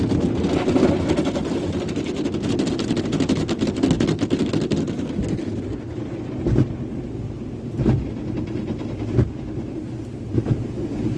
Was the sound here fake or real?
real